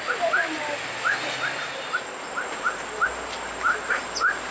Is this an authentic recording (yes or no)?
yes